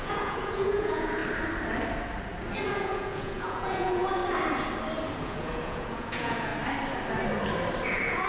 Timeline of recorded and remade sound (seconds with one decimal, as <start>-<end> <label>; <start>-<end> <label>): 0.0-1.2 remade; 1.2-2.6 recorded; 2.6-4.2 remade; 4.2-5.2 recorded; 5.2-6.5 remade; 6.5-7.9 recorded; 7.9-8.3 remade